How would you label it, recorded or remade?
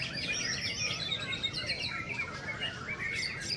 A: recorded